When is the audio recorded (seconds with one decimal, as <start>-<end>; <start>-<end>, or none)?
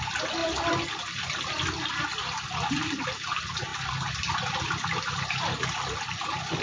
0.0-6.6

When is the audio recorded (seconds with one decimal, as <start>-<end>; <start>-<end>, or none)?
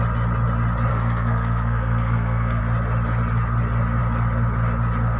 0.0-0.9; 2.6-5.2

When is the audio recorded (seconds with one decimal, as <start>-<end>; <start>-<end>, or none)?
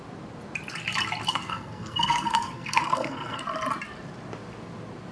0.0-1.3; 3.4-5.1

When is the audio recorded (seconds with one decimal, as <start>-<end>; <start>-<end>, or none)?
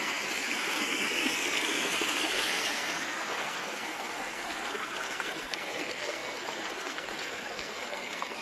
none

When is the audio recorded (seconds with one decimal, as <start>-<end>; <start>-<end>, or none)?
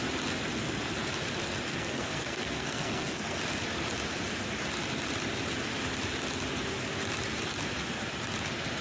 0.0-1.7; 3.4-8.8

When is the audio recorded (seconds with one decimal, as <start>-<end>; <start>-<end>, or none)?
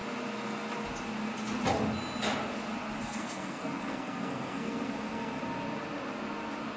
0.0-3.0; 5.4-6.8